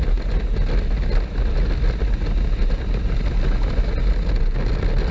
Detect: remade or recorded recorded